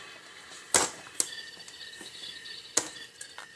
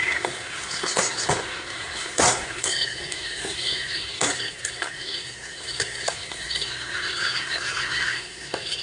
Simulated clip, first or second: second